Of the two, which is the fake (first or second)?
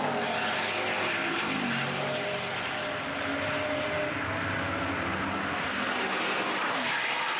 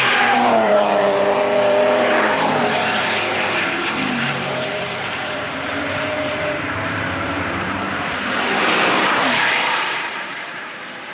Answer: second